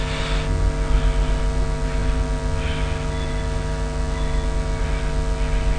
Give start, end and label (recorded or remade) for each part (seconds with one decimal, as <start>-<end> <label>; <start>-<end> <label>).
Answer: 0.0-5.8 recorded